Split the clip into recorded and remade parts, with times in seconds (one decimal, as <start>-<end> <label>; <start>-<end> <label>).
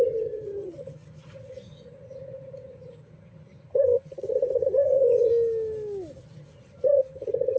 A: 0.0-5.3 remade; 5.3-6.2 recorded; 6.2-7.6 remade